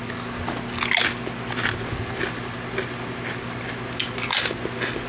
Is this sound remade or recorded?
recorded